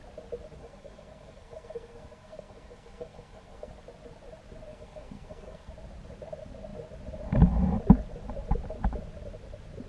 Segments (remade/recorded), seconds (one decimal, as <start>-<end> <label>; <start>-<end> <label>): 0.0-0.6 recorded; 0.6-3.7 remade; 3.7-4.7 recorded; 4.7-5.7 remade; 5.7-9.9 recorded